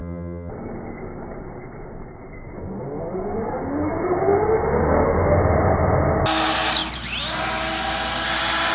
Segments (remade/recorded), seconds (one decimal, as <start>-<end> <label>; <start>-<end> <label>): 0.0-0.5 remade; 0.5-8.7 recorded